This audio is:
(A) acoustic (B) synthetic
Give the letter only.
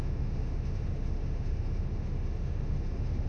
B